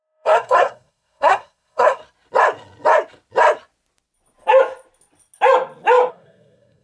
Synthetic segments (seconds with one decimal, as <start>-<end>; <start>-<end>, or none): 0.0-2.0; 6.1-6.8